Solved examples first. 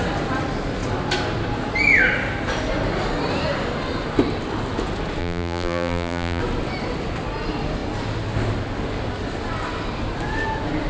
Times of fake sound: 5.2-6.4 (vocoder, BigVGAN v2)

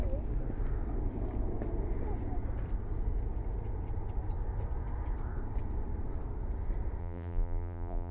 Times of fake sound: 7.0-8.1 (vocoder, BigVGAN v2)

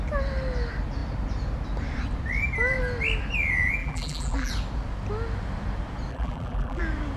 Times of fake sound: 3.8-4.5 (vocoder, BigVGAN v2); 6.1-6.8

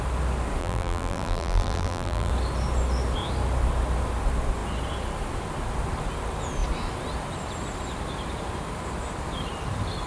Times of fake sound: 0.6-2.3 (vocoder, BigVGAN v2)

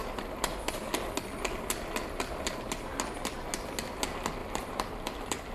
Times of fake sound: 4.4-5.5 (vocoder, BigVGAN v2)

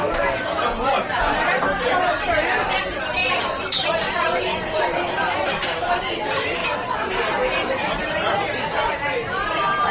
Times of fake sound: 1.2-9.9 (vocoder, BigVGAN v2)